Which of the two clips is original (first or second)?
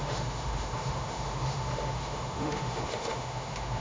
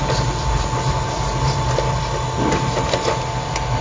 second